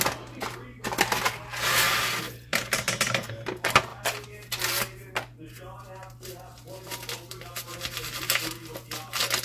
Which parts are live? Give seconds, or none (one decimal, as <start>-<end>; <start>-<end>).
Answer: 0.0-2.5; 3.3-9.4